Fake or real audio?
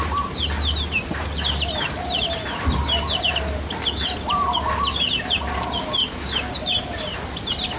real